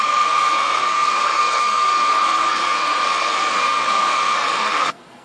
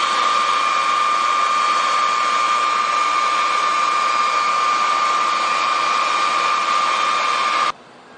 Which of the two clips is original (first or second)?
second